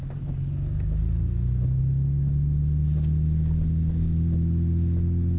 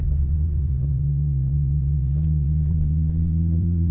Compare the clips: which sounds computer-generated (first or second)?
second